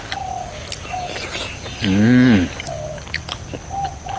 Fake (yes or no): no